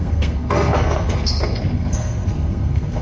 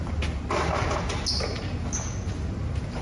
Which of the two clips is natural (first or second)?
second